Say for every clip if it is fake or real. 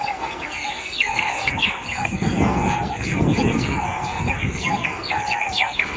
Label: fake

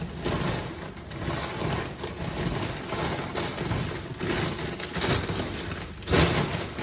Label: real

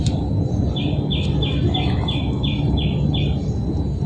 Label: real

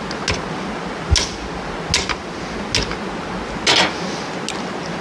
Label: real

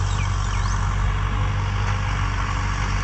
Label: real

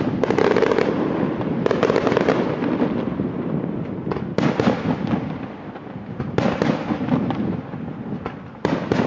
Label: real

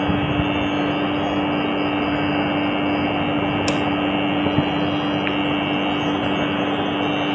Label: real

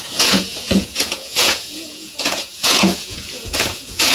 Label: fake